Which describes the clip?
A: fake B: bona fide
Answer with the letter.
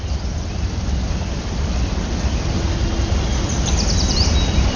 B